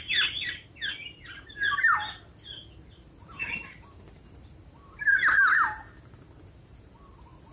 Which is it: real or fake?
real